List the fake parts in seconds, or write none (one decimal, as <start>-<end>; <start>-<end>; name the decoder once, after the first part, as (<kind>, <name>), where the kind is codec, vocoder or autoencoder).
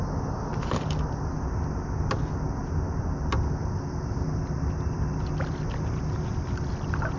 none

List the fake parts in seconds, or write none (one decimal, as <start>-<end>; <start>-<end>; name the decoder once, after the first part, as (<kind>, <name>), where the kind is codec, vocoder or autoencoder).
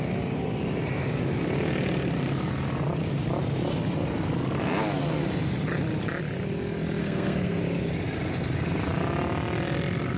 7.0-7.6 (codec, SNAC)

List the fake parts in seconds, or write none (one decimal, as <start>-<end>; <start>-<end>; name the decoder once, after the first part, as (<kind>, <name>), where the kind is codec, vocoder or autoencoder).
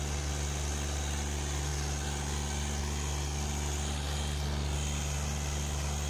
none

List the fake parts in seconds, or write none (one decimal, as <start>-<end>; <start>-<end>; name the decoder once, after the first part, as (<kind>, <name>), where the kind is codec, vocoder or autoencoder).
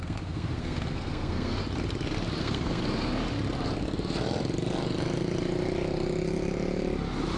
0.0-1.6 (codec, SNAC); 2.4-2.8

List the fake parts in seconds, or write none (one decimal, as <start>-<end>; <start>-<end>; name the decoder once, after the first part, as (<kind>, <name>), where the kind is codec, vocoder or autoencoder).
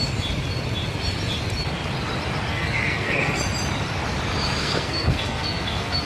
2.5-3.4 (codec, SNAC); 4.6-6.1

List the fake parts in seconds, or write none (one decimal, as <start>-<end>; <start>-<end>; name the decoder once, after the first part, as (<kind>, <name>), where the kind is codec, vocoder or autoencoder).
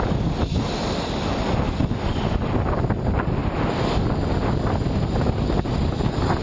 none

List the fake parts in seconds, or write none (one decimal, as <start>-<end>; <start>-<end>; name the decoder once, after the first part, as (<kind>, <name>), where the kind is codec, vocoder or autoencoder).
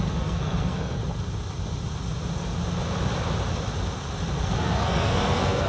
0.0-1.0 (codec, SNAC); 4.4-5.7